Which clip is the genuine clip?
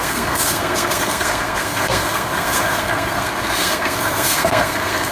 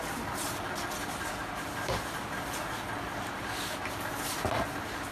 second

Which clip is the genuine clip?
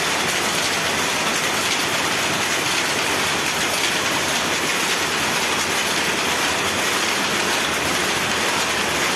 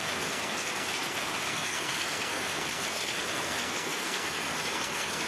first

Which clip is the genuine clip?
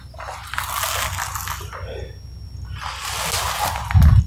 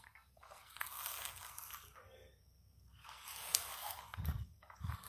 first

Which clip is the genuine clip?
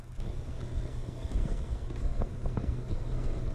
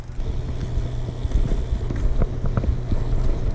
second